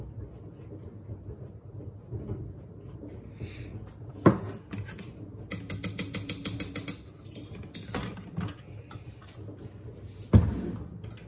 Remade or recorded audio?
recorded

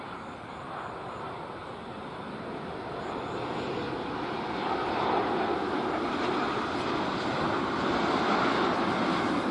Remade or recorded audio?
recorded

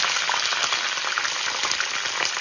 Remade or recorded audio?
recorded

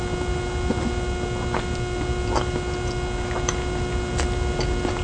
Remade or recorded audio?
recorded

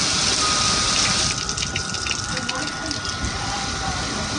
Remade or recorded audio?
recorded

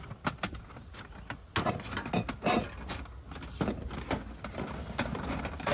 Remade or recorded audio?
recorded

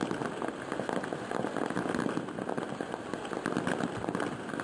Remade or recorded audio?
recorded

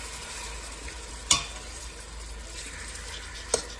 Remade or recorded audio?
recorded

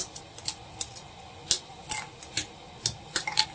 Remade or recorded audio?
recorded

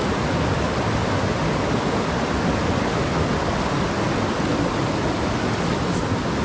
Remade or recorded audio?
recorded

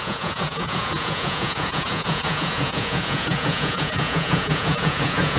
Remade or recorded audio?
remade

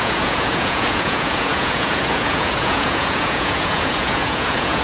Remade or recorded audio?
remade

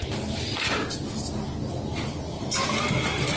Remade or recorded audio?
recorded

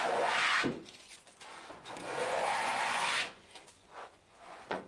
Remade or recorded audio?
remade